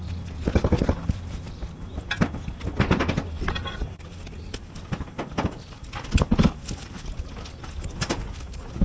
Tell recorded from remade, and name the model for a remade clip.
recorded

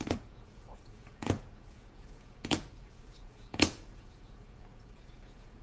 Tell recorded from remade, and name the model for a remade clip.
remade, vocoder, Vocos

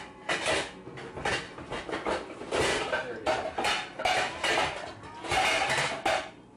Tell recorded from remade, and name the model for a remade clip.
recorded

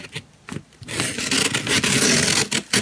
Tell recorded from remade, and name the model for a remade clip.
recorded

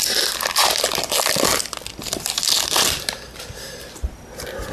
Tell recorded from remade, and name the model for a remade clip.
recorded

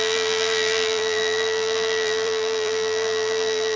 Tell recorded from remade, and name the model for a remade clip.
remade, vocoder, BigVGAN v2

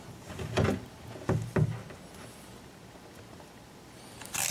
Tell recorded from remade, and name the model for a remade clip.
recorded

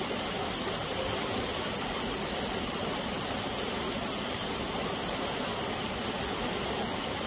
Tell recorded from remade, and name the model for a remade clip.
recorded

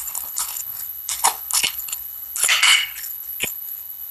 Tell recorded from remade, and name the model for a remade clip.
remade, codec, HILCodec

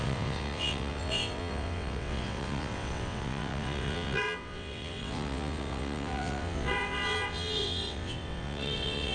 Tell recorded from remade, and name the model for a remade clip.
remade, vocoder, WaveNeXt